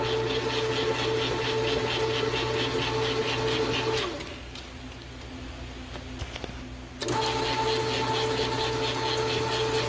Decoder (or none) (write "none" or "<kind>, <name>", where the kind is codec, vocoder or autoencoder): none